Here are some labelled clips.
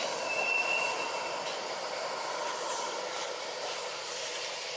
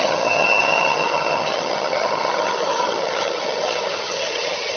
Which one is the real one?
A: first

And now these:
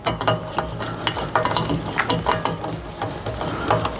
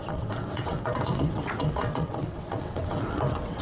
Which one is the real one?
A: first